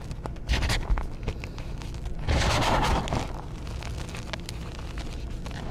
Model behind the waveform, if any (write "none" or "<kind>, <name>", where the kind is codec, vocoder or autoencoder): none